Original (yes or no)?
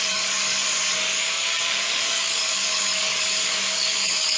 no